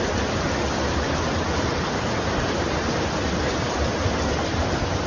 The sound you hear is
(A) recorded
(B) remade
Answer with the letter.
A